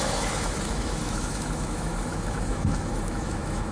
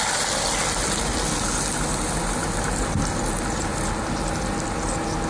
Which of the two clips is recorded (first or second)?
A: second